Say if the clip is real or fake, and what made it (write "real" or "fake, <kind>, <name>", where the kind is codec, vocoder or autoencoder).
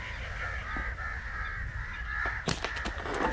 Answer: real